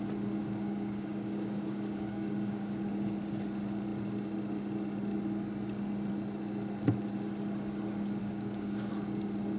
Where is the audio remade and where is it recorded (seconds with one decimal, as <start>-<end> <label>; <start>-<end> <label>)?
0.0-0.4 recorded; 0.4-2.8 remade; 2.8-8.2 recorded; 8.2-8.9 remade; 8.9-9.6 recorded

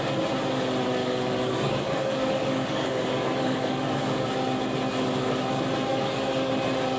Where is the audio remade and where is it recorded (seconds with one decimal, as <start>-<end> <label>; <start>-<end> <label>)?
0.0-1.0 recorded; 1.0-4.3 remade; 4.3-5.9 recorded; 5.9-6.5 remade; 6.5-7.0 recorded

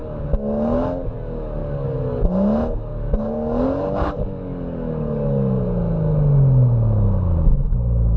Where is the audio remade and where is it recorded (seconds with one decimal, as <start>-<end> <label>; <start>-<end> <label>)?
0.0-1.1 remade; 1.1-1.6 recorded; 1.6-2.2 remade; 2.2-2.9 recorded; 2.9-5.6 remade; 5.6-8.2 recorded

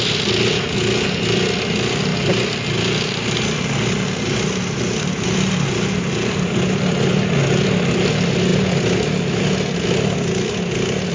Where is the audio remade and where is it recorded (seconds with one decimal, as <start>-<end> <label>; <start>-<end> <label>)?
0.0-11.1 recorded

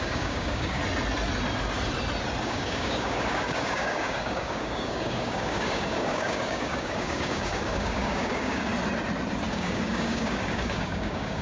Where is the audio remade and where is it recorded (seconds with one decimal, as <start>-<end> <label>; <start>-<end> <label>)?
0.0-0.8 remade; 0.8-2.4 recorded; 2.4-8.7 remade; 8.7-9.5 recorded; 9.5-11.4 remade

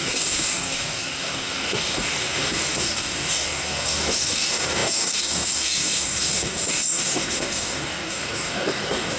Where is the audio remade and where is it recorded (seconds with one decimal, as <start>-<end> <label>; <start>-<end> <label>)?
0.0-9.2 remade

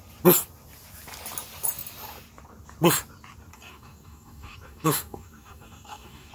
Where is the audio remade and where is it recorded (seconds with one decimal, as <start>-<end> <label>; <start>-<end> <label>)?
0.0-3.5 recorded; 3.5-6.3 remade

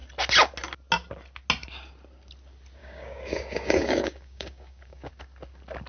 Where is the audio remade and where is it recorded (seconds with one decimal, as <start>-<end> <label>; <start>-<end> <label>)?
0.0-2.8 recorded; 2.8-5.1 remade; 5.1-5.9 recorded